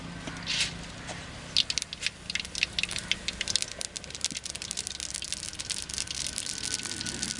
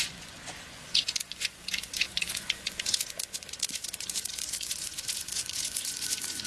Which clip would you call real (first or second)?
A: first